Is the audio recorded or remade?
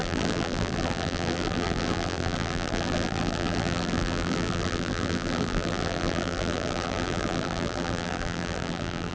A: remade